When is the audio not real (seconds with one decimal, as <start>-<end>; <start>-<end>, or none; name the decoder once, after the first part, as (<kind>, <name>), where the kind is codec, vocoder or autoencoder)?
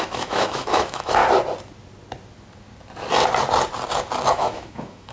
0.0-1.2 (autoencoder, DAC-VAE); 4.3-5.1